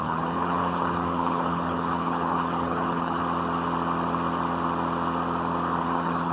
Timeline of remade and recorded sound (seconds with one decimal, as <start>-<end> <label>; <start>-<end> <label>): 0.0-3.2 remade; 3.2-5.8 recorded; 5.8-6.3 remade